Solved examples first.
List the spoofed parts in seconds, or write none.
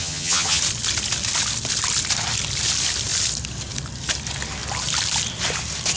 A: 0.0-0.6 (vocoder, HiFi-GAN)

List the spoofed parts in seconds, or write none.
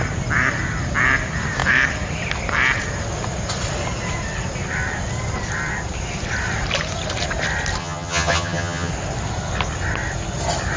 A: 7.8-8.9 (vocoder, HiFi-GAN)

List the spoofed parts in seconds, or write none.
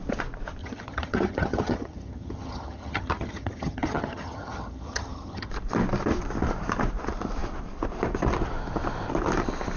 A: 0.6-5.5 (vocoder, HiFi-GAN)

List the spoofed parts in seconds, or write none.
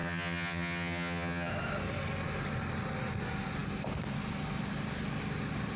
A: 0.0-1.5 (vocoder, HiFi-GAN)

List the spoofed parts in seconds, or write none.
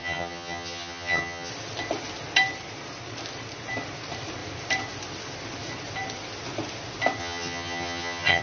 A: 0.0-1.5 (vocoder, HiFi-GAN); 7.2-8.4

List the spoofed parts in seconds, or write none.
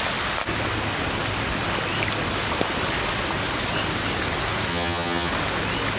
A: 4.7-5.3 (vocoder, HiFi-GAN)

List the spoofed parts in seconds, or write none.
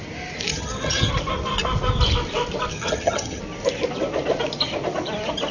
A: 0.5-1.1 (vocoder, HiFi-GAN); 2.7-3.4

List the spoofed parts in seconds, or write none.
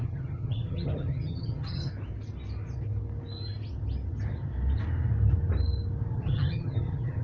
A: 0.0-1.9 (vocoder, HiFi-GAN); 6.2-7.2